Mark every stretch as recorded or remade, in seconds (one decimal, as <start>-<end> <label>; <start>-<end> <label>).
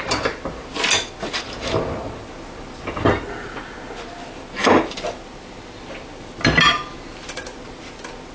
0.0-8.3 recorded